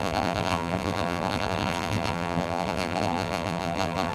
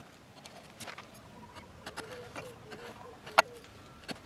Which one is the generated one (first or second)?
first